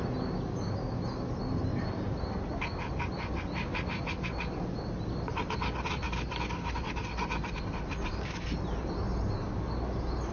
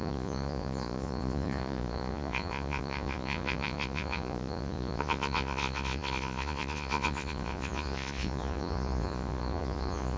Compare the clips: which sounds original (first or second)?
first